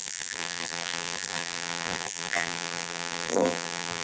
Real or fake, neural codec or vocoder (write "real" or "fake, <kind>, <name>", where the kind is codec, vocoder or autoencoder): fake, vocoder, BigVGAN v2